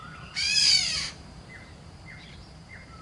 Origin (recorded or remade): remade